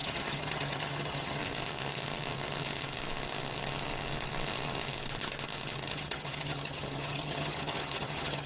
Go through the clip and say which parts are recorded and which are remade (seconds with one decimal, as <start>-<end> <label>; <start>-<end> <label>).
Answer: 0.0-1.4 remade; 1.4-5.9 recorded; 5.9-8.5 remade